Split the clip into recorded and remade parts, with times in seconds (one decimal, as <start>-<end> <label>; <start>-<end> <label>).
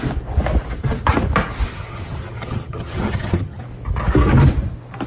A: 0.0-1.7 recorded; 1.7-3.6 remade; 3.6-5.1 recorded